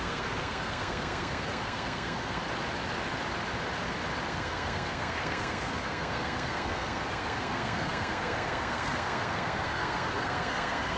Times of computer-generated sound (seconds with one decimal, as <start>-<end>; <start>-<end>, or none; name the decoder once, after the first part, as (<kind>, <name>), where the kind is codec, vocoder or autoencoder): 0.0-2.4 (codec, SNAC); 4.3-11.0